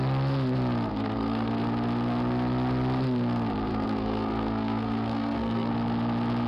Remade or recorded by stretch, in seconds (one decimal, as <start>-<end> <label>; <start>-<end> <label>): 0.0-0.9 recorded; 0.9-1.5 remade; 1.5-3.7 recorded; 3.7-5.7 remade; 5.7-6.5 recorded